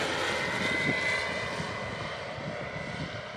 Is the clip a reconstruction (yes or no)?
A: no